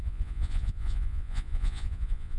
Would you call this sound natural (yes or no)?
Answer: no